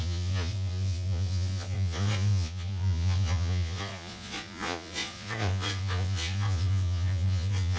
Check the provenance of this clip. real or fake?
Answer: fake